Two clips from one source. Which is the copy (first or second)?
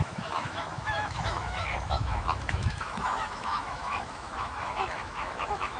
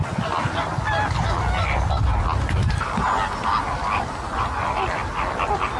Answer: first